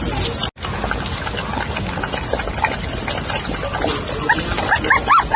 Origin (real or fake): real